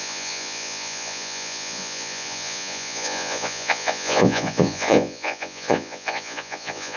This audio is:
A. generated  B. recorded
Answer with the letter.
A